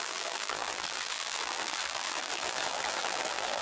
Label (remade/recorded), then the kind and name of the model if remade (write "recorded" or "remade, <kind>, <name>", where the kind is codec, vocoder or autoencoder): remade, vocoder, BigVGAN v2